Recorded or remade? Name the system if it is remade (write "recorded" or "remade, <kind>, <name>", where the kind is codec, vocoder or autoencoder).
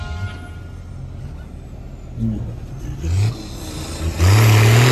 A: recorded